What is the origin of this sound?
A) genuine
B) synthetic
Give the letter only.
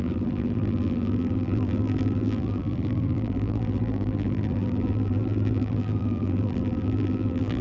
B